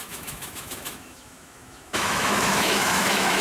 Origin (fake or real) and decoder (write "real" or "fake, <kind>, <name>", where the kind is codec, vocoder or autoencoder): fake, autoencoder, DAC-VAE